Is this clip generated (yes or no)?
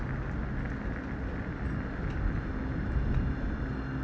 no